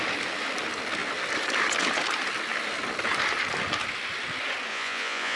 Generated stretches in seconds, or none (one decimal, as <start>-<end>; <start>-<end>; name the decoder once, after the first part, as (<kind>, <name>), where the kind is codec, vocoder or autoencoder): 4.7-5.4 (vocoder, Vocos)